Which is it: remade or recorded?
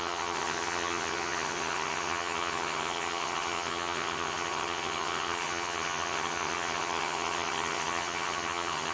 remade